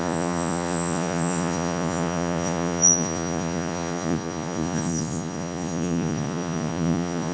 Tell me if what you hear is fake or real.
fake